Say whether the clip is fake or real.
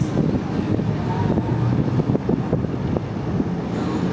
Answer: real